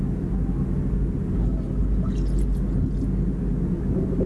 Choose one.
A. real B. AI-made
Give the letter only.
A